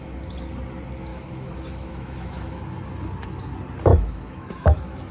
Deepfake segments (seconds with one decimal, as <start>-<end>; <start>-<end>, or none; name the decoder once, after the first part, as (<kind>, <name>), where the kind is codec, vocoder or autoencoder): 1.1-2.6 (autoencoder, DAC-VAE); 3.9-5.1